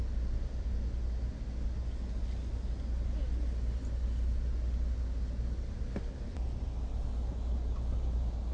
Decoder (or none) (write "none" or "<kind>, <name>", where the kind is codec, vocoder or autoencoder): none